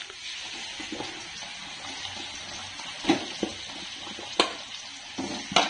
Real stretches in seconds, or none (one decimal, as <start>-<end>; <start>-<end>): 0.0-5.7